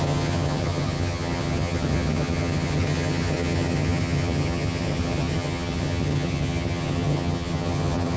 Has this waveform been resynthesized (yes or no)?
yes